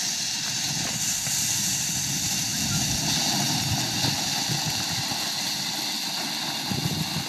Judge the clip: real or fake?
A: real